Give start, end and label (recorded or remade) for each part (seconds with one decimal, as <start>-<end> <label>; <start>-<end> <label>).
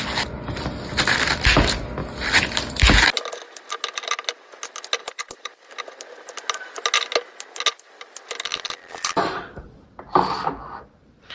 0.0-2.0 recorded; 2.0-3.0 remade; 3.0-8.5 recorded; 8.5-9.6 remade; 9.6-11.3 recorded